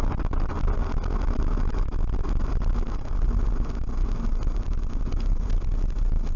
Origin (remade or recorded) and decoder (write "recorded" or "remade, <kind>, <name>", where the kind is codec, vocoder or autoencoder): recorded